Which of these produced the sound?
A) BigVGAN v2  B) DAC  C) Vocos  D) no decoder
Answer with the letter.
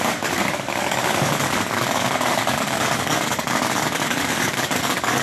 B